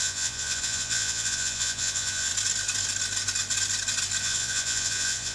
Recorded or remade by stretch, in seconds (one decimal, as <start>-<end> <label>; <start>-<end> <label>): 0.0-2.3 remade; 2.3-4.2 recorded; 4.2-5.3 remade